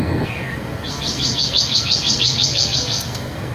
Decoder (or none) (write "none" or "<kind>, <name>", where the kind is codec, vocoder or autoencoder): codec, SNAC